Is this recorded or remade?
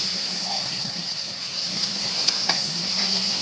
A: remade